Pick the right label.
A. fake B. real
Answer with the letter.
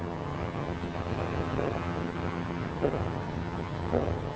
A